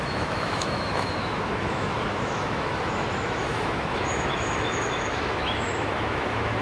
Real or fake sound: fake